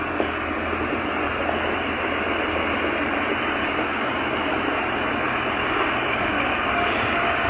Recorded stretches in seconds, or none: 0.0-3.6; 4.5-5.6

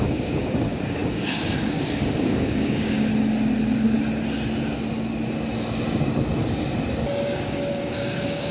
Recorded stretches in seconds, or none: 3.1-7.2

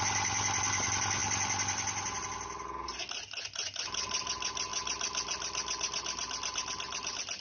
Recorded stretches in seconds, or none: 0.0-7.4

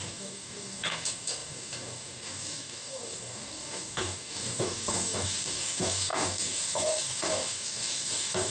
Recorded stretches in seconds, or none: none